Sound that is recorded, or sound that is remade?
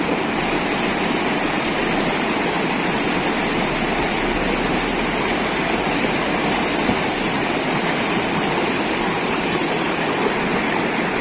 recorded